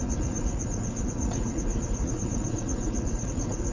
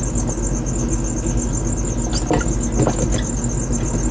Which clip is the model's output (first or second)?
first